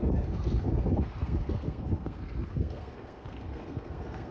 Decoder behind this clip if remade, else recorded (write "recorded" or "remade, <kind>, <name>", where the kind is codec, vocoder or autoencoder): remade, codec, SNAC